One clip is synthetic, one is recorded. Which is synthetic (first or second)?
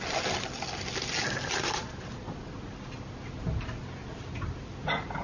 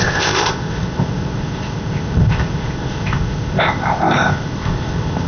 second